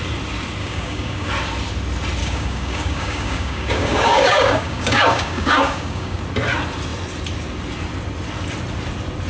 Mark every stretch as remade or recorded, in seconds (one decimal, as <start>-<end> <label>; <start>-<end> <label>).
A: 0.0-0.6 recorded; 0.6-1.3 remade; 1.3-2.2 recorded; 2.2-6.2 remade; 6.2-9.3 recorded